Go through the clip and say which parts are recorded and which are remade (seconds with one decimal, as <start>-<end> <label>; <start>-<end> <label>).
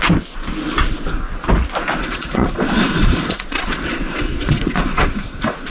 0.0-2.0 recorded; 2.0-5.7 remade